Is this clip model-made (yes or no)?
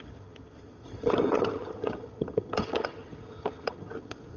yes